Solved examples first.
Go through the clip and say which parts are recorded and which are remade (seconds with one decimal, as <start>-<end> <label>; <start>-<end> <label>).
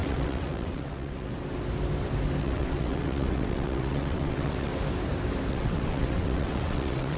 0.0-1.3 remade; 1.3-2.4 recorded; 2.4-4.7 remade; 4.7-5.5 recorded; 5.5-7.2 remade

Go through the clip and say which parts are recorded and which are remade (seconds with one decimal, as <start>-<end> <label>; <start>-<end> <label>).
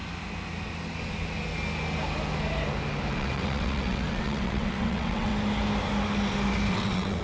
0.0-3.1 recorded; 3.1-5.3 remade; 5.3-6.7 recorded; 6.7-7.2 remade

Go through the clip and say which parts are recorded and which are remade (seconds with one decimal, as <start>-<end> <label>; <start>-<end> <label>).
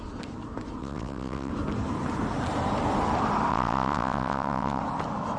0.0-0.8 recorded; 0.8-1.5 remade; 1.5-3.5 recorded; 3.5-4.8 remade; 4.8-5.4 recorded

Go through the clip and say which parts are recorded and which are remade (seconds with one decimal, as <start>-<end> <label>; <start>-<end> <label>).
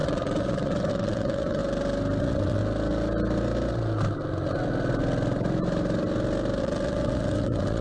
0.0-1.6 remade; 1.6-2.2 recorded; 2.2-2.6 remade; 2.6-6.6 recorded; 6.6-7.8 remade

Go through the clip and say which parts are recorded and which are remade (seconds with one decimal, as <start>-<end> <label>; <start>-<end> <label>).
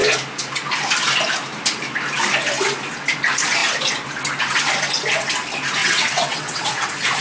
0.0-5.8 recorded; 5.8-6.7 remade; 6.7-7.2 recorded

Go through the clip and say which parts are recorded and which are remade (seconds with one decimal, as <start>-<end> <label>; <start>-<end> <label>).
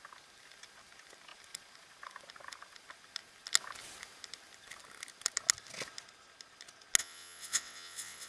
0.0-7.0 recorded; 7.0-8.3 remade